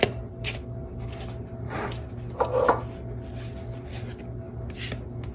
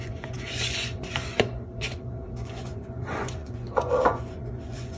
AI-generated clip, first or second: second